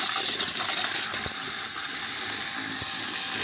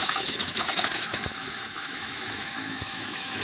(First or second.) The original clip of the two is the first